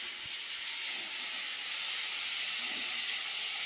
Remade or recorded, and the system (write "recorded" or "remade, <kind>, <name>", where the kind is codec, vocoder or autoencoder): recorded